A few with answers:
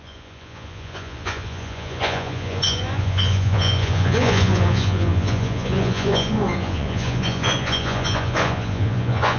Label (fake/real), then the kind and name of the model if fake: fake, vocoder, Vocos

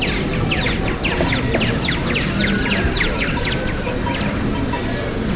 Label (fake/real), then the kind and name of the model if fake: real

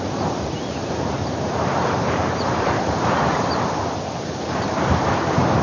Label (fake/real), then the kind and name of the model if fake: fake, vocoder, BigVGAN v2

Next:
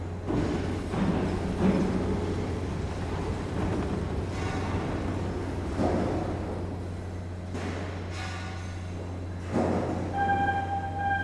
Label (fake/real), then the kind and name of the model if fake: real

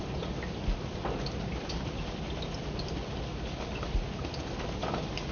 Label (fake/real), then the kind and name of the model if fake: real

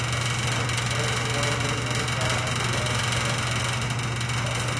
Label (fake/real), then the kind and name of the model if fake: real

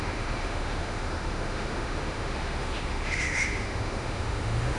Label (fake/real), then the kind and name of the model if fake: fake, autoencoder, DAC-VAE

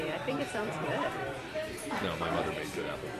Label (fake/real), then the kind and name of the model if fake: fake, vocoder, BigVGAN v2